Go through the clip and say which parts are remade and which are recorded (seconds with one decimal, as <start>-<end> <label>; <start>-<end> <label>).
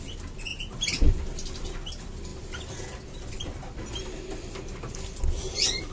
0.0-5.9 recorded